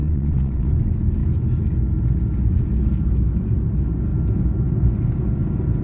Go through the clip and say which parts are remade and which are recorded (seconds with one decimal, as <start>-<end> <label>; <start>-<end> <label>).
0.0-0.7 remade; 0.7-5.8 recorded